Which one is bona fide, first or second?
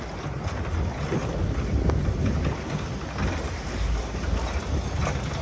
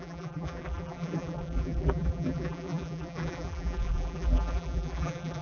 first